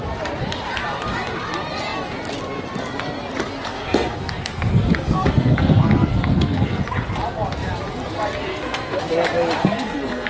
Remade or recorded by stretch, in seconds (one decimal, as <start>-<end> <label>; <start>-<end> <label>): 0.0-3.7 recorded; 3.7-6.8 remade; 6.8-8.5 recorded; 8.5-9.0 remade; 9.0-9.6 recorded; 9.6-10.3 remade